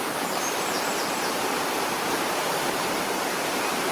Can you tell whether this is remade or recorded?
remade